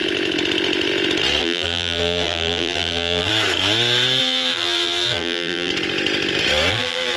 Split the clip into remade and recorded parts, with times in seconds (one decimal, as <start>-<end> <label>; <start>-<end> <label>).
0.0-1.4 recorded; 1.4-3.3 remade; 3.3-4.2 recorded; 4.2-5.7 remade; 5.7-6.7 recorded; 6.7-7.2 remade

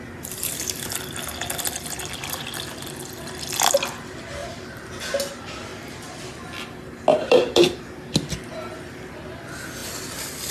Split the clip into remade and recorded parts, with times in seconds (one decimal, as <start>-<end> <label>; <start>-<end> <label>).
0.0-4.4 recorded; 4.4-5.0 remade; 5.0-5.7 recorded; 5.7-6.3 remade; 6.3-7.1 recorded; 7.1-7.8 remade; 7.8-10.5 recorded